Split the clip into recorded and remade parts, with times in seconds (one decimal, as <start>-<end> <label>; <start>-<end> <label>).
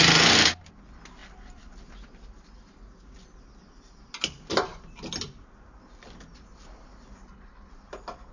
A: 0.0-7.2 recorded; 7.2-7.7 remade; 7.7-8.3 recorded